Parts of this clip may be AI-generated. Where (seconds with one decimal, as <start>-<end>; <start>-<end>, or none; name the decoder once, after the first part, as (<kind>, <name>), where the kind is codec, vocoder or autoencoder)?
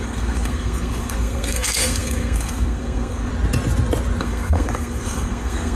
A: 0.0-3.3 (codec, SNAC); 4.2-5.8